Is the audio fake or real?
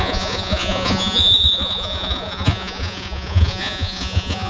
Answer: fake